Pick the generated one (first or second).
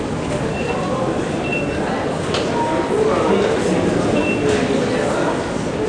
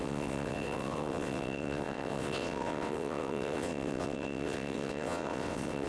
second